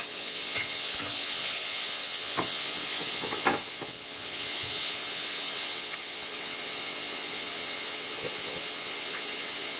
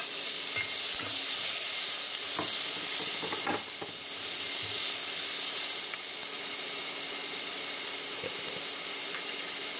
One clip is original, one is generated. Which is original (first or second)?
second